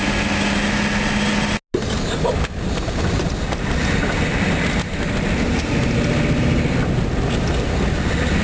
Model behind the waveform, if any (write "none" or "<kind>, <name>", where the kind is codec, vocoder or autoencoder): none